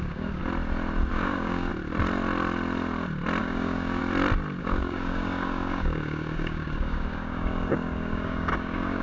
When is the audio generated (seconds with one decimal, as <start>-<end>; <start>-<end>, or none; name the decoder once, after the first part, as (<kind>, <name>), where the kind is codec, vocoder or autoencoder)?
0.0-0.4 (codec, DAC); 1.1-1.7; 3.4-4.0; 4.6-9.0